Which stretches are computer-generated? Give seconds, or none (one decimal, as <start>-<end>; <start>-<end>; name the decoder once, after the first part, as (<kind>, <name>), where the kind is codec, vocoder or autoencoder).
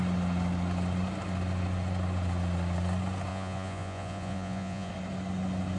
3.3-4.9 (vocoder, Vocos)